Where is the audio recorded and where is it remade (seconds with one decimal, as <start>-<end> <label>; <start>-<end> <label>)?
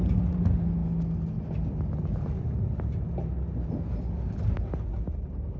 0.0-5.6 recorded